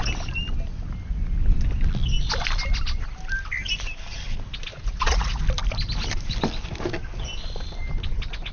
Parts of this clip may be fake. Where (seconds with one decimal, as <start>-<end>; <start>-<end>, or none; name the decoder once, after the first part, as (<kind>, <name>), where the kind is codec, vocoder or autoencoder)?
4.7-5.4 (vocoder, Vocos)